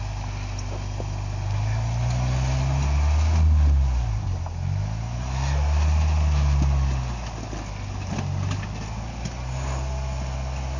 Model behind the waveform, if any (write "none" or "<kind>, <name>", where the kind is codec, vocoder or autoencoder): none